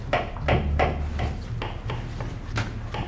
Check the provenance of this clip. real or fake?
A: real